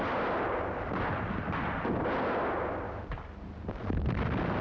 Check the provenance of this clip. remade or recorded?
recorded